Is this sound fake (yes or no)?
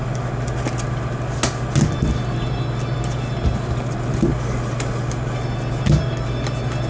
no